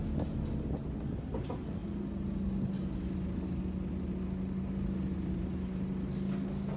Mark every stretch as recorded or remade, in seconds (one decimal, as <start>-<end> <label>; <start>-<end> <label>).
0.0-6.8 recorded

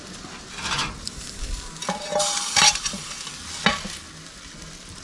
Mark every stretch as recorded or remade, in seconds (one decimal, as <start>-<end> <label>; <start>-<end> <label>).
0.0-0.8 recorded; 0.8-3.2 remade; 3.2-5.0 recorded

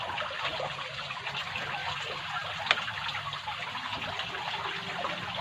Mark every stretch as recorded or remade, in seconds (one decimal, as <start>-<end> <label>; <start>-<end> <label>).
0.0-0.5 recorded; 0.5-1.3 remade; 1.3-1.8 recorded; 1.8-2.6 remade; 2.6-3.3 recorded; 3.3-4.1 remade; 4.1-5.4 recorded

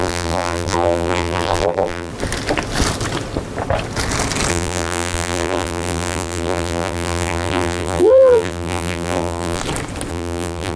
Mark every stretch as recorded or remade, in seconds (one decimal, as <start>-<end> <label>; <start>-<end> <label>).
0.0-2.1 remade; 2.1-4.5 recorded; 4.5-9.6 remade; 9.6-10.1 recorded; 10.1-10.8 remade